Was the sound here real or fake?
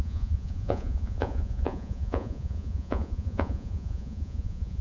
fake